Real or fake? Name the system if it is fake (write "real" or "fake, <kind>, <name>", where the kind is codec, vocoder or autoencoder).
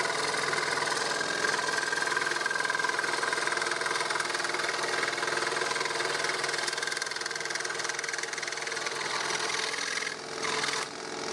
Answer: real